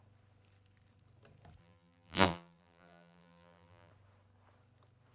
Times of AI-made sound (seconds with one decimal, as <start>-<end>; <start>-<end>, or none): 1.6-3.9